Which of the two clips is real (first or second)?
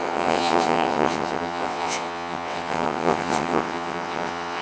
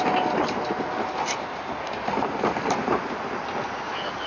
second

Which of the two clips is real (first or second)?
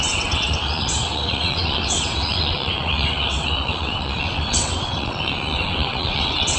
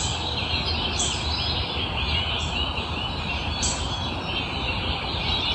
second